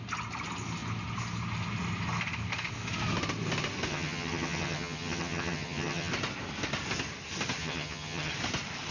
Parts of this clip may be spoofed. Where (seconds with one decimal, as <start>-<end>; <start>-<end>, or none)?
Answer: 3.9-6.1; 7.6-8.3